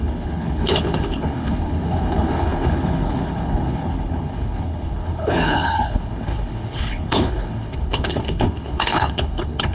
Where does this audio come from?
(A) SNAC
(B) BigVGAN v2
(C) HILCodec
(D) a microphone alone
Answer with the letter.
C